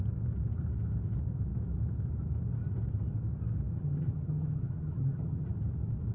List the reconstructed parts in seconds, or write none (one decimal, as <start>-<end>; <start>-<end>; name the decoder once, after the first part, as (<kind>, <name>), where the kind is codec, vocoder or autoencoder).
3.7-5.5 (vocoder, HiFi-GAN)

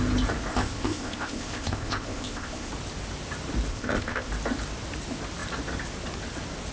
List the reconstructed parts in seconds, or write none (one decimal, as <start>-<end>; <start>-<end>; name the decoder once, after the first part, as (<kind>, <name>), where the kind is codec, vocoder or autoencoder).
0.5-2.7 (codec, ZipCodec); 3.7-4.3

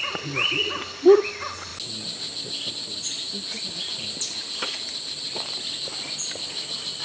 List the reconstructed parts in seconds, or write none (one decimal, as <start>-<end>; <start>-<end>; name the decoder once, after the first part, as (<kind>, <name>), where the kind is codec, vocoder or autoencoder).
none

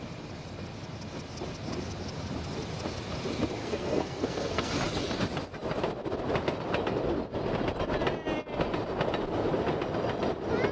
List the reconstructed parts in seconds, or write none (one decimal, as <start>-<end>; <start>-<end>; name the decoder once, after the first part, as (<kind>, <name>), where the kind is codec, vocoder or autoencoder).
3.6-4.7 (codec, SNAC)

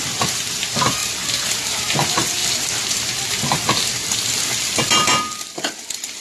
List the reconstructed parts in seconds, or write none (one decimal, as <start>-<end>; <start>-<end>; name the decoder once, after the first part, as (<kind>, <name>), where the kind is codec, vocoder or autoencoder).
none

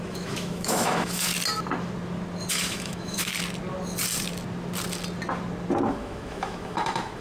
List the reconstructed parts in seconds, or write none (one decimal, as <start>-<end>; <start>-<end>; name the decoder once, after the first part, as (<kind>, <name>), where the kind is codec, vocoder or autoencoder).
0.0-1.3 (autoencoder, DAC-VAE); 2.5-3.3; 5.9-7.2

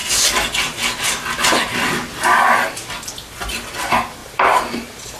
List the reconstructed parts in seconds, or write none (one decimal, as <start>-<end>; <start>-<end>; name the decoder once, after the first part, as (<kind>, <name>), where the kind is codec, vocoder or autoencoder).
4.2-5.2 (vocoder, BigVGAN v2)

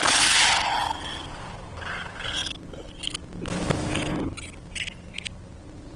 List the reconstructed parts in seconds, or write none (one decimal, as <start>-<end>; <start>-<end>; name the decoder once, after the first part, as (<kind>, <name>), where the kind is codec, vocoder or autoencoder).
none